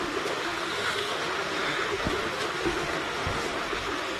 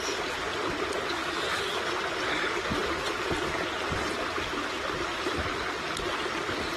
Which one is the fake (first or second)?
first